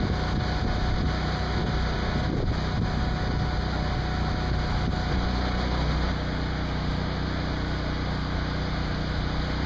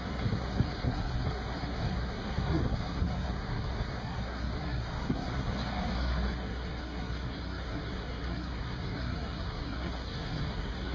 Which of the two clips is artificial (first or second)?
second